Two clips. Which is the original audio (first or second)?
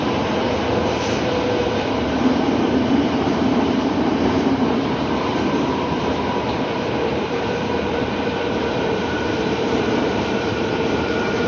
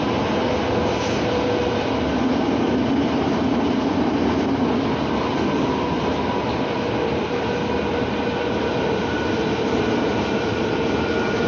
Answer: second